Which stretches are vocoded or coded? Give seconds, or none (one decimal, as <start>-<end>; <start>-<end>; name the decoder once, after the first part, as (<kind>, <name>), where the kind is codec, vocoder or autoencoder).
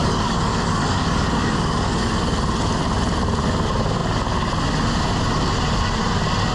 0.0-2.1 (codec, DAC)